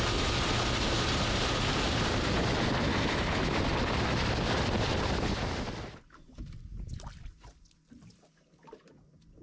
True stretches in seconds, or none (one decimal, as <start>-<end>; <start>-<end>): 0.0-2.9; 3.5-9.4

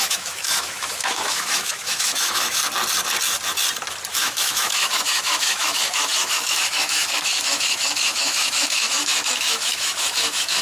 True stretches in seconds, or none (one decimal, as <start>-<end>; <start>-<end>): 2.6-4.1